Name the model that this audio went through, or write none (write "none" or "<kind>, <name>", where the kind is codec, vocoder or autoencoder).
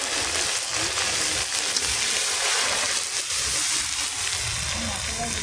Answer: none